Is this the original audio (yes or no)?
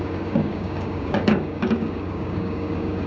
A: no